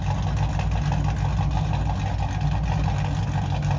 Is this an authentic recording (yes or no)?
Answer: yes